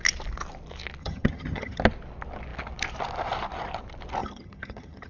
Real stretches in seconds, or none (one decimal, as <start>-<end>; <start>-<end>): 0.0-1.0; 1.8-4.2